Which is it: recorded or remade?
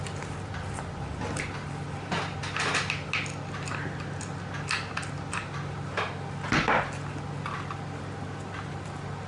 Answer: recorded